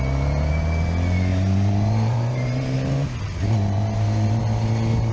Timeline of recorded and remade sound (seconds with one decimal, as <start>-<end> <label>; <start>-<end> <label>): 0.0-1.3 recorded; 1.3-4.4 remade; 4.4-5.1 recorded

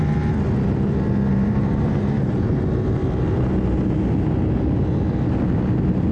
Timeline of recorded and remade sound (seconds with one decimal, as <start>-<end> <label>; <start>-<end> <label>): 0.0-1.3 recorded; 1.3-2.6 remade; 2.6-6.1 recorded

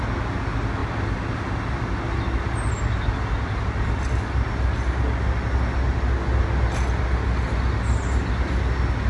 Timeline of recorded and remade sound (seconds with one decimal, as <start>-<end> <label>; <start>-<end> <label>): 0.0-9.1 recorded

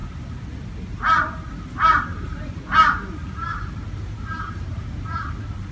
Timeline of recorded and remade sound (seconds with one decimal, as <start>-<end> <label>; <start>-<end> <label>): 0.0-2.1 recorded; 2.1-5.3 remade; 5.3-5.7 recorded

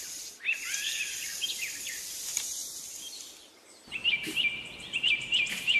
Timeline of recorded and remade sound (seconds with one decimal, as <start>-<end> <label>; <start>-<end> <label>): 0.0-1.3 remade; 1.3-1.9 recorded; 1.9-2.6 remade; 2.6-3.5 recorded; 3.5-5.8 remade

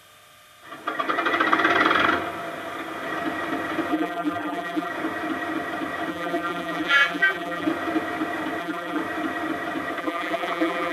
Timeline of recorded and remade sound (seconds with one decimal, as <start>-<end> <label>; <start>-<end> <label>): 0.0-3.9 recorded; 3.9-4.9 remade; 4.9-6.1 recorded; 6.1-7.7 remade; 7.7-8.6 recorded; 8.6-9.0 remade; 9.0-10.0 recorded; 10.0-10.9 remade

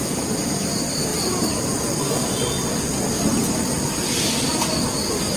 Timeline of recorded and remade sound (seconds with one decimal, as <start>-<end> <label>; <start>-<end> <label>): 0.0-1.1 remade; 1.1-4.3 recorded; 4.3-5.4 remade